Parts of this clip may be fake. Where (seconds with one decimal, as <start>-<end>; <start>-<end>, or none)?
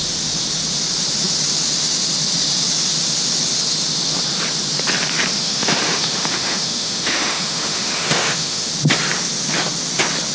5.4-8.7